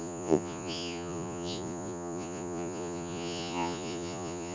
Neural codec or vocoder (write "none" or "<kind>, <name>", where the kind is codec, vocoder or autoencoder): vocoder, Vocos